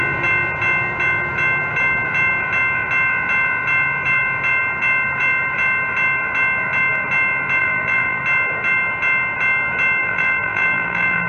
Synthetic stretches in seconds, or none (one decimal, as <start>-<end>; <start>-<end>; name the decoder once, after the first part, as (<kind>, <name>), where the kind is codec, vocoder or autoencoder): 7.6-8.2 (vocoder, BigVGAN v2); 10.0-11.3